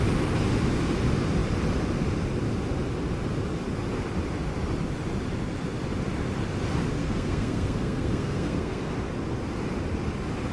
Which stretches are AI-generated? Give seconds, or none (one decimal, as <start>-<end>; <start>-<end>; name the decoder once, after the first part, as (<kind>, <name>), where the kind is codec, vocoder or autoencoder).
7.0-8.8 (codec, SNAC)